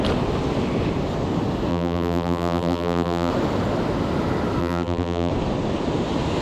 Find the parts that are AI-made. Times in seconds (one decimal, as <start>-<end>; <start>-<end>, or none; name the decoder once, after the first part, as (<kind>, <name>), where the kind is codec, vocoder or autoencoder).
1.7-3.3 (vocoder, BigVGAN v2); 4.6-5.3